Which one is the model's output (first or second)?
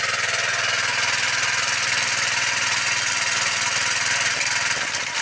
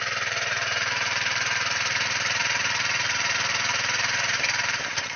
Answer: second